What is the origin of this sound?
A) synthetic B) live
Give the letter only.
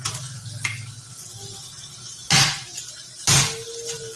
B